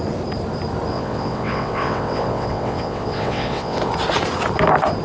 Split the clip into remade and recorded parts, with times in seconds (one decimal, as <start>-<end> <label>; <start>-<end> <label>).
0.0-0.9 recorded; 0.9-3.9 remade; 3.9-5.0 recorded